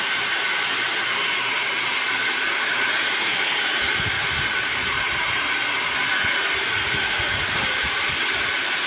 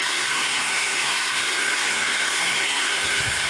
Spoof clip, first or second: second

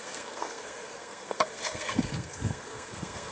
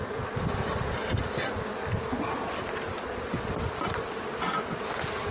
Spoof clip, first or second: first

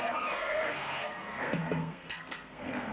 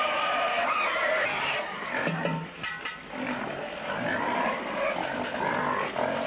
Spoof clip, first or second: first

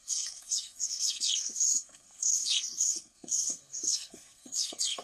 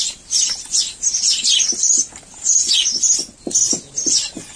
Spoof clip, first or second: first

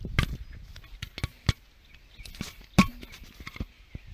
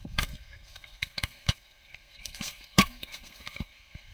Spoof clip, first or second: second